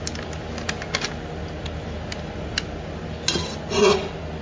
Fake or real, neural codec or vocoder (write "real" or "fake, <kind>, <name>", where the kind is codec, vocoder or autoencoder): real